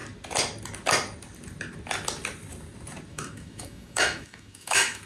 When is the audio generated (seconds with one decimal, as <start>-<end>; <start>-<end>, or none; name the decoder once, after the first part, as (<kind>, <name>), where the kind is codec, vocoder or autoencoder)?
3.1-5.1 (autoencoder, DAC-VAE)